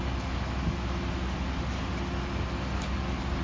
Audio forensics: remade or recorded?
recorded